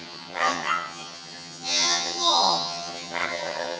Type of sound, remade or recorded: remade